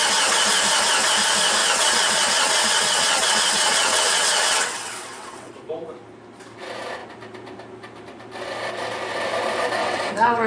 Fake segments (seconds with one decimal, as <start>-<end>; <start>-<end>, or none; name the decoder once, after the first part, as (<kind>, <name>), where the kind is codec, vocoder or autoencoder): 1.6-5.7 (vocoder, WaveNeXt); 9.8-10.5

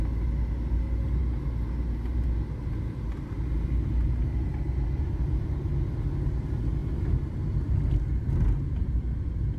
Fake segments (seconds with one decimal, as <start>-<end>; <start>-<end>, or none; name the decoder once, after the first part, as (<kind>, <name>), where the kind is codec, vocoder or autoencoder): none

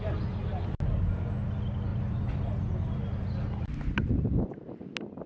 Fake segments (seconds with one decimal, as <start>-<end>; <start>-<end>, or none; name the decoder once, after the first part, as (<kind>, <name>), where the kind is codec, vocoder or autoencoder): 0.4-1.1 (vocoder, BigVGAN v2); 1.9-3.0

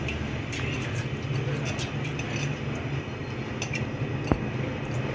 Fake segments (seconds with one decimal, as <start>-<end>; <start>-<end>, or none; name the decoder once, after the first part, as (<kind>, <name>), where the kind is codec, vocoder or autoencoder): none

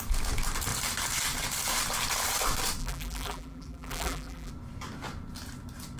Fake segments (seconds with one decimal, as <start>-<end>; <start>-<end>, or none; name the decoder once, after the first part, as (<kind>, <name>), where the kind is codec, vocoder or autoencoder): 2.8-4.5 (vocoder, BigVGAN v2)